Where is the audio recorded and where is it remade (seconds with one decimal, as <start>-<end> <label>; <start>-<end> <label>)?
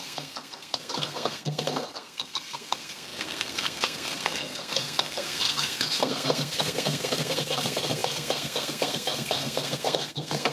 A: 0.0-10.5 remade